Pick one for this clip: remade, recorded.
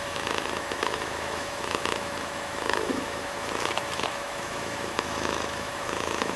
remade